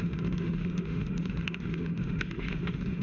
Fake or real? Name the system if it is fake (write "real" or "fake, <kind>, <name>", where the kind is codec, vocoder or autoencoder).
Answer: fake, autoencoder, DAC-VAE